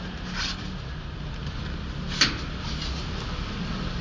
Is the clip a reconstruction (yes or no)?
no